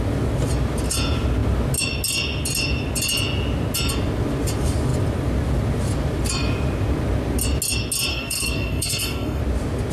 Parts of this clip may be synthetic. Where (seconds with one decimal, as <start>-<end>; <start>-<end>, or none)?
8.1-9.4